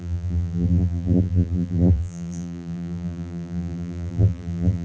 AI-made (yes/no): yes